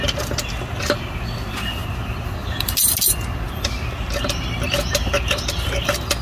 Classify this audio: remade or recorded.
recorded